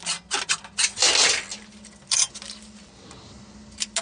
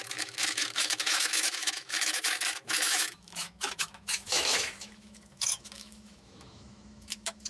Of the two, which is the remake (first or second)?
second